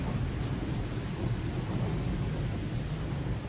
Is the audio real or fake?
real